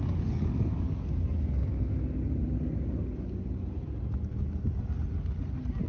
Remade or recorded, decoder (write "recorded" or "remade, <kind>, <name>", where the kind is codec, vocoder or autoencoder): recorded